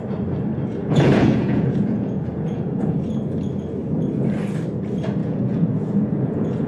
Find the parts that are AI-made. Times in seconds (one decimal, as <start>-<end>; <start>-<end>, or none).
0.8-3.0; 5.2-6.7